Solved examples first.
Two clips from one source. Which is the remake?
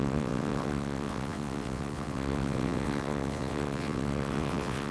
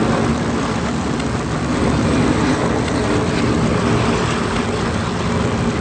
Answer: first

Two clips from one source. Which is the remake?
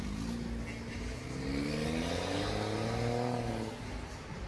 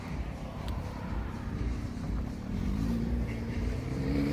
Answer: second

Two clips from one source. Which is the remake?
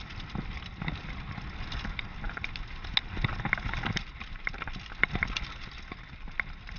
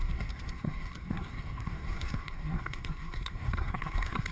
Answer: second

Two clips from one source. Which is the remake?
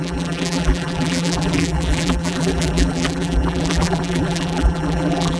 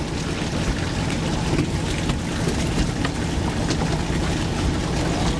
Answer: first